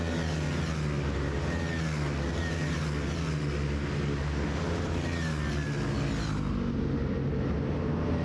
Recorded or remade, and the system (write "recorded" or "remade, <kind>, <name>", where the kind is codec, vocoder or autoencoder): recorded